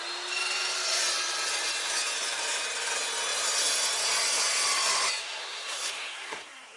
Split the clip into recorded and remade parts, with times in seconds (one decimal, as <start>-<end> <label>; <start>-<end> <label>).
0.0-5.2 recorded; 5.2-6.8 remade